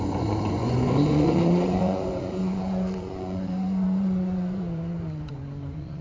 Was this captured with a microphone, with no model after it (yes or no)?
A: no